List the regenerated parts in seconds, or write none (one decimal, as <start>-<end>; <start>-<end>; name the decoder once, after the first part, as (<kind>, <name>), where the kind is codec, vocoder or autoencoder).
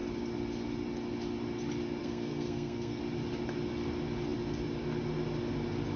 2.0-3.0 (codec, SNAC)